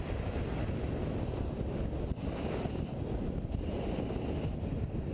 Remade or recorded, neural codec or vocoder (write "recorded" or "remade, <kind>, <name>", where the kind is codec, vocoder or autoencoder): recorded